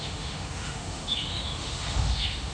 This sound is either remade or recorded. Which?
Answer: remade